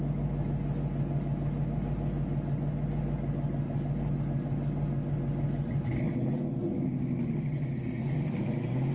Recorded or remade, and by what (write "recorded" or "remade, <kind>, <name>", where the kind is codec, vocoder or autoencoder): recorded